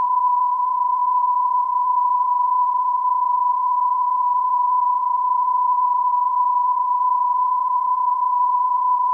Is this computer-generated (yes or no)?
yes